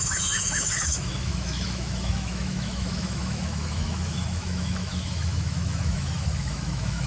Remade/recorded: remade